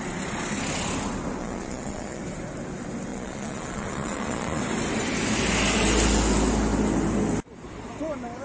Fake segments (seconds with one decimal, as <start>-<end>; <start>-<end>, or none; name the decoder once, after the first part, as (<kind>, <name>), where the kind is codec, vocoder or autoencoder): 1.4-2.2 (vocoder, Vocos); 3.1-4.6